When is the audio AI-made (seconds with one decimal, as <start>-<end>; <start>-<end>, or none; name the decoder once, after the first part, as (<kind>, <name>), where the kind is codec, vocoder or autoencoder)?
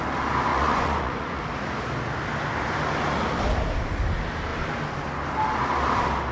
0.5-1.4 (vocoder, Vocos)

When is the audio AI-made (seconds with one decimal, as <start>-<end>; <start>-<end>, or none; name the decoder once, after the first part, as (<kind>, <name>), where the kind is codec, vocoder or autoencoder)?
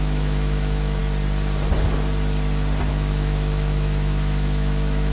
0.0-1.0 (autoencoder, DAC-VAE); 2.9-5.1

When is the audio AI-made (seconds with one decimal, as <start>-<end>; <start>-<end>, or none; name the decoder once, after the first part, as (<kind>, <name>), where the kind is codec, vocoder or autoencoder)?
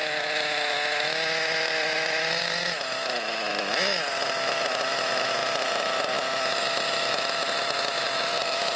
0.0-8.8 (autoencoder, DAC-VAE)